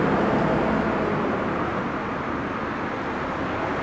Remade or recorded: recorded